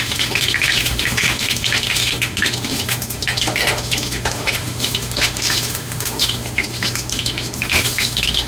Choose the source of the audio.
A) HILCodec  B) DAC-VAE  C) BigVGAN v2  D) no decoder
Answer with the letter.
B